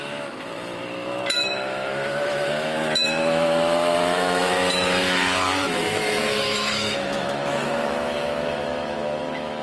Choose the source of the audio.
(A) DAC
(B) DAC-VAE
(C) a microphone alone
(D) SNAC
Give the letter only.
B